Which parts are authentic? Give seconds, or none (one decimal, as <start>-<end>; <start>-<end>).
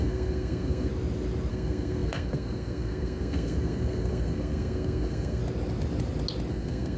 0.9-1.5; 5.4-6.5